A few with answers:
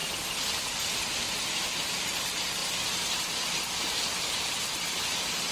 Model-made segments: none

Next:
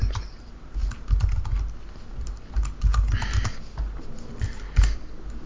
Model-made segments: none

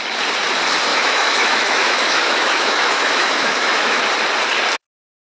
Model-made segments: 0.9-4.0 (autoencoder, DAC-VAE)

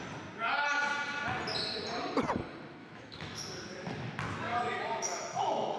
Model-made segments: 2.8-3.4 (autoencoder, DAC-VAE); 4.5-5.8

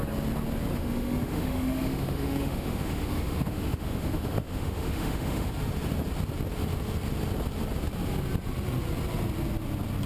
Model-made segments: 0.7-5.5 (autoencoder, DAC-VAE)